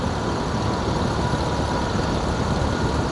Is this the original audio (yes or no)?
yes